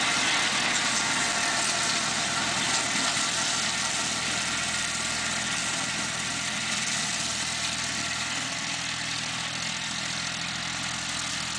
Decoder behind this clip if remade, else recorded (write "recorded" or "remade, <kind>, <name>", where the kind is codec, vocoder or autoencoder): recorded